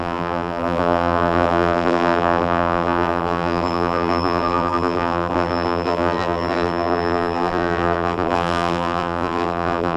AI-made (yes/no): yes